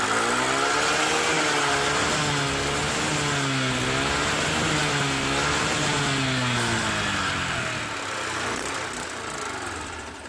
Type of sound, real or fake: real